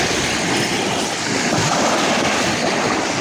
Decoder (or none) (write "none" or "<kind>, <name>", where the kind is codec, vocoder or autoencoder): none